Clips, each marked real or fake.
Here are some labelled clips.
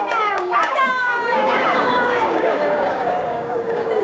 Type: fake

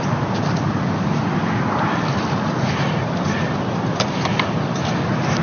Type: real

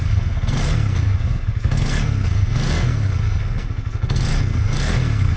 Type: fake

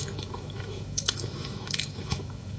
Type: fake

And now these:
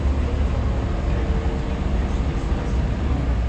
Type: real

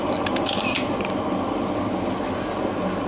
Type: real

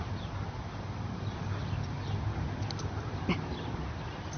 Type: real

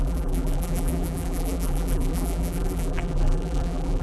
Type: fake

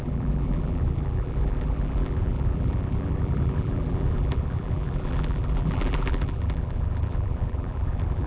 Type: fake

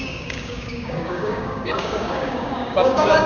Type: fake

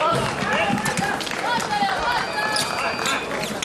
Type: real